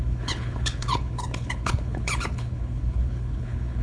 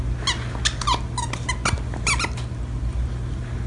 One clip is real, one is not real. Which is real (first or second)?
second